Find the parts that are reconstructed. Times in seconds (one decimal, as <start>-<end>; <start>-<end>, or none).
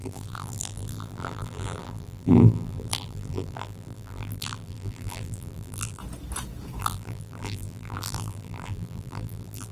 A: 0.0-6.0; 6.8-9.7